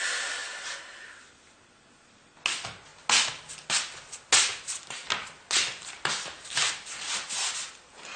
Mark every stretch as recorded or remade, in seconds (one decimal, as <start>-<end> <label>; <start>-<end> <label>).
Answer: 0.0-0.4 recorded; 0.4-1.2 remade; 1.2-8.2 recorded